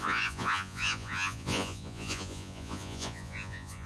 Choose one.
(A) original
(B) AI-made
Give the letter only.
B